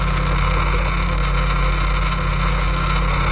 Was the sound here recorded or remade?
recorded